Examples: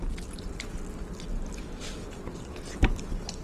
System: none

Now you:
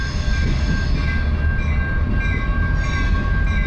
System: none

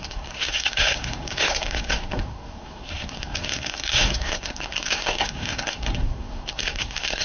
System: codec, SNAC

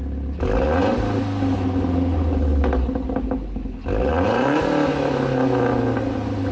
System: none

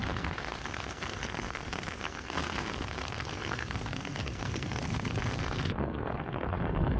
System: codec, SNAC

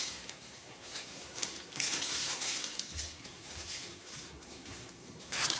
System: codec, SNAC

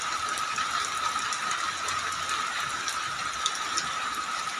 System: none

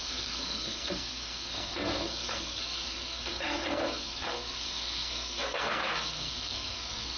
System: codec, SNAC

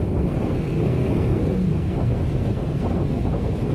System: codec, SNAC